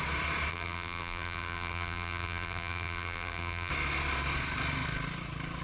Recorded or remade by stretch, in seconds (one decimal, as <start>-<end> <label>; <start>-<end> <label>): 0.0-0.5 recorded; 0.5-3.7 remade; 3.7-5.6 recorded